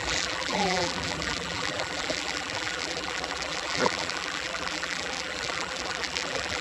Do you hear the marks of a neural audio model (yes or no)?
yes